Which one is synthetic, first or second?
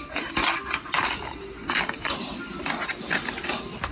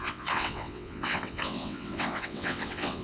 second